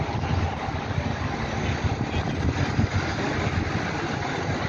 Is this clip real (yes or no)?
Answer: yes